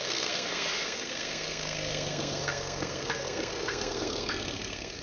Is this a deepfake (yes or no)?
yes